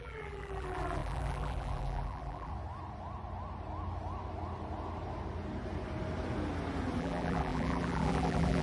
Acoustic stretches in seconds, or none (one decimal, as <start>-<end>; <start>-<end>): 2.5-7.0